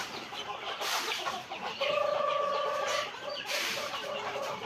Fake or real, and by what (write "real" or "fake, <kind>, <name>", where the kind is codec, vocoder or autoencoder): fake, vocoder, BigVGAN v2